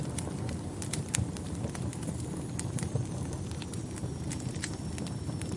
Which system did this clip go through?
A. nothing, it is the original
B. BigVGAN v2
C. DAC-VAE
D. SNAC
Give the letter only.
A